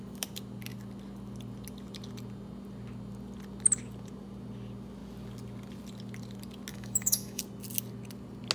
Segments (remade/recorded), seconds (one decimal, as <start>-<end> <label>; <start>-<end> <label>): 0.0-6.7 recorded; 6.7-7.4 remade; 7.4-8.5 recorded